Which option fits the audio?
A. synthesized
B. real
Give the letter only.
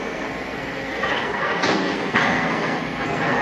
A